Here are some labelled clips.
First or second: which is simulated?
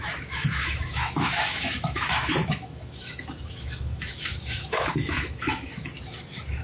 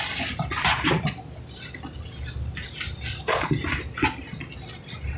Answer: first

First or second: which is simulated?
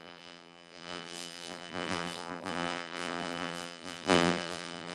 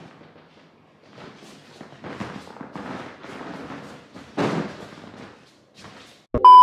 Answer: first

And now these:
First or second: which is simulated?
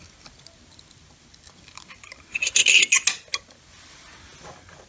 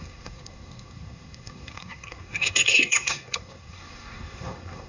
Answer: second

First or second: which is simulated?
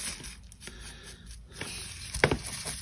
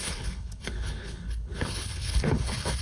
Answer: second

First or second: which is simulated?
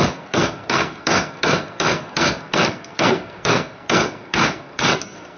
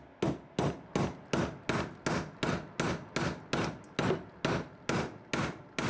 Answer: first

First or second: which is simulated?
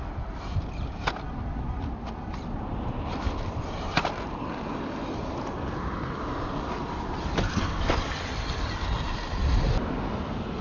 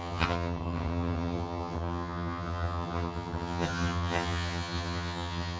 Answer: second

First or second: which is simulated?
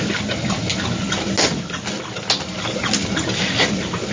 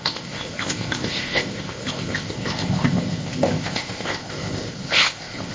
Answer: second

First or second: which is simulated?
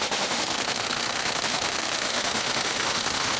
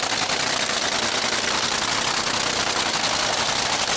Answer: first